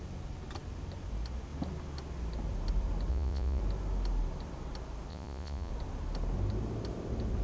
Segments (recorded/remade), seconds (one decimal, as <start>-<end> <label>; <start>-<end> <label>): 0.0-3.1 recorded; 3.1-3.6 remade; 3.6-5.1 recorded; 5.1-5.7 remade; 5.7-7.4 recorded